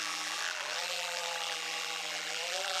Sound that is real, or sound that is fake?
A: fake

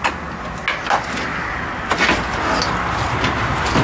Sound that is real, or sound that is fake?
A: real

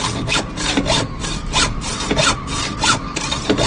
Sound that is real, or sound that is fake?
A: real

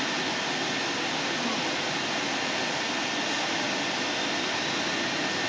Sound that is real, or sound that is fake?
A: real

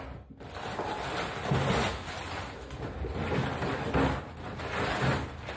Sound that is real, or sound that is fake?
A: real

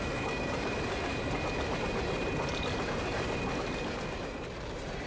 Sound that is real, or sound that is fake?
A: fake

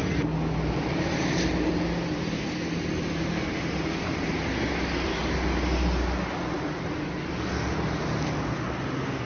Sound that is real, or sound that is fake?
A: real